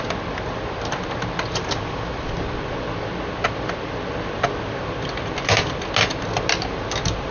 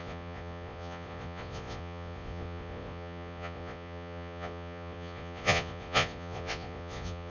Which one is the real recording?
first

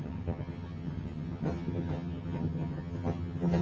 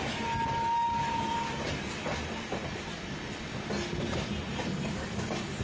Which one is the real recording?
second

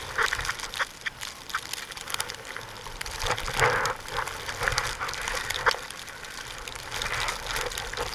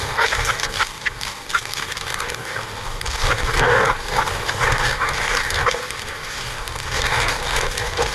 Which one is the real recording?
first